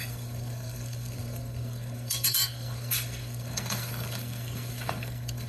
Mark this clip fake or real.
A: fake